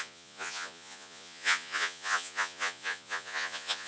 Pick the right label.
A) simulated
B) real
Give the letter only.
A